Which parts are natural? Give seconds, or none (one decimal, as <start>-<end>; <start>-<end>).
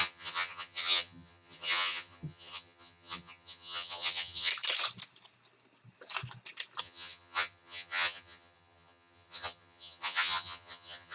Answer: 4.5-6.8